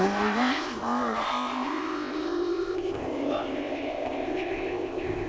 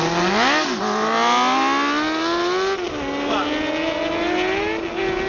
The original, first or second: second